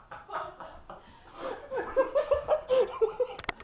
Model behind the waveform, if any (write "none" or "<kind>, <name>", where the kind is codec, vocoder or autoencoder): none